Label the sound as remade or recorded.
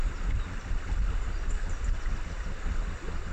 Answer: recorded